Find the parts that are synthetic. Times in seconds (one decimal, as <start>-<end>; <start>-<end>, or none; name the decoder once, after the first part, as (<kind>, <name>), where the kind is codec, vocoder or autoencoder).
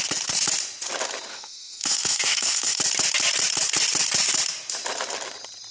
1.3-2.8 (autoencoder, DAC-VAE)